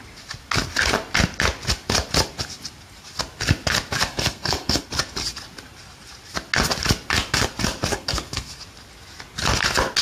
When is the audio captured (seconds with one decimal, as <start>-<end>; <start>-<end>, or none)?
0.0-4.1; 4.8-7.9; 8.5-10.0